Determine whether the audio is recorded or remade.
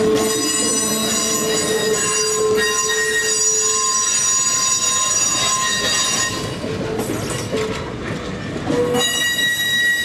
recorded